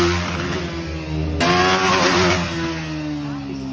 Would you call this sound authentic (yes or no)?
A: yes